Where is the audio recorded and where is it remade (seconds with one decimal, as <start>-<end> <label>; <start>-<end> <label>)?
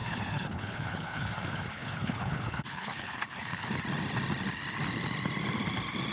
0.0-3.7 remade; 3.7-6.1 recorded